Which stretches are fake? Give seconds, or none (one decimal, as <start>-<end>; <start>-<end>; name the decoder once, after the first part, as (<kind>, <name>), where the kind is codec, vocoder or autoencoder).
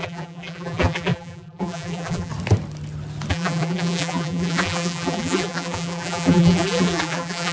0.0-2.3 (vocoder, BigVGAN v2); 3.3-7.5